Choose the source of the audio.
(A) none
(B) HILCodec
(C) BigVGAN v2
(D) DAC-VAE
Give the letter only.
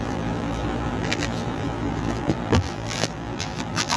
C